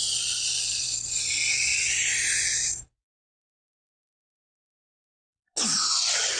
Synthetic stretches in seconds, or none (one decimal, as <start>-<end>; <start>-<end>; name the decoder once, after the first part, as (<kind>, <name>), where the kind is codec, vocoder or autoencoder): none